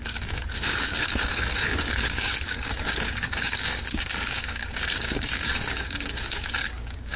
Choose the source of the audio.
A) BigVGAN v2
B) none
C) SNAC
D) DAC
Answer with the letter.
D